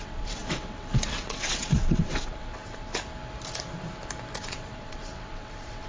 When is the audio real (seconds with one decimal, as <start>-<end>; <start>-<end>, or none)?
3.0-4.4

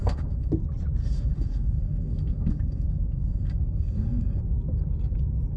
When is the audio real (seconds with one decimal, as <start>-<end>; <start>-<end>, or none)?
0.5-1.0; 4.4-5.6

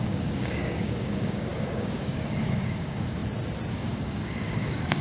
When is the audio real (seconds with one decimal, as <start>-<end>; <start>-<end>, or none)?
3.2-3.7

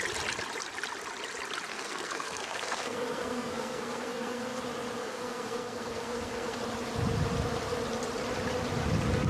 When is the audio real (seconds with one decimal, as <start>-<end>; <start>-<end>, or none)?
0.0-1.7; 4.6-5.0; 6.6-9.3